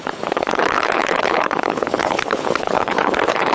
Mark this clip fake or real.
fake